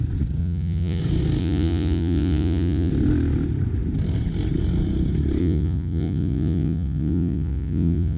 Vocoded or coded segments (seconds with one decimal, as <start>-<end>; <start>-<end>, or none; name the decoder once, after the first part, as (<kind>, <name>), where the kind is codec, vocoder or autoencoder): 0.4-1.0 (vocoder, Vocos); 1.4-2.9; 5.4-8.2